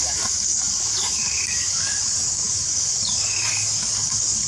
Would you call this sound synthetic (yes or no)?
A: yes